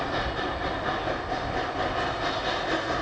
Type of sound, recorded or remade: recorded